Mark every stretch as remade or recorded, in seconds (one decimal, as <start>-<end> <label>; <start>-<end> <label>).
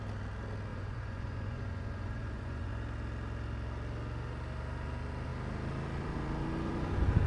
0.0-0.7 recorded; 0.7-2.7 remade; 2.7-7.3 recorded